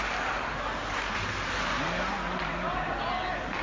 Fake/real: real